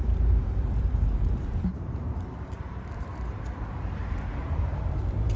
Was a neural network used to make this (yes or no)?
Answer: yes